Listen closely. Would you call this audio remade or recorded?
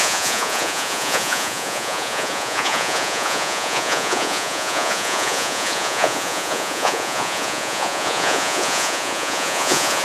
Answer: remade